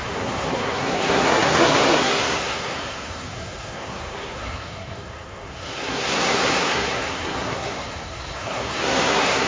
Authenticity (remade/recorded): remade